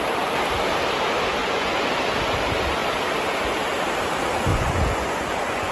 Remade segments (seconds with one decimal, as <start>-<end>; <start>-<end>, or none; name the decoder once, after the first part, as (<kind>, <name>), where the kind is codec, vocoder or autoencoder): 1.4-1.9 (vocoder, Vocos); 4.5-5.7